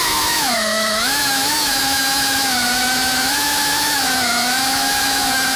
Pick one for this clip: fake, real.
fake